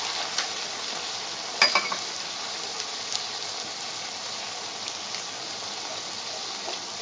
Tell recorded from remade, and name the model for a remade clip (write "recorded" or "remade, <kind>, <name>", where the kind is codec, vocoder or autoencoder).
recorded